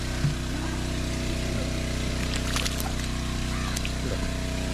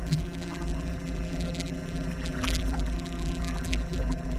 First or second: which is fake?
second